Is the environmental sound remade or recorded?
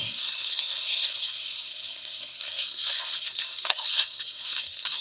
remade